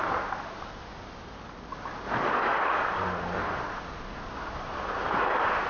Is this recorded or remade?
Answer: recorded